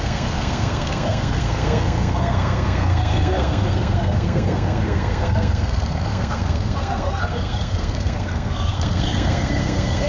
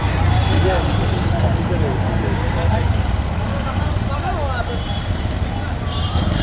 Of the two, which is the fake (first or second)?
first